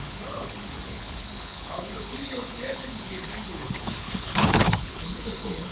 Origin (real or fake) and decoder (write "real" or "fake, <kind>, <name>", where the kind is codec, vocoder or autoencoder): fake, codec, HILCodec